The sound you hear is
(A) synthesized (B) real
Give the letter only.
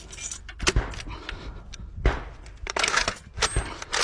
B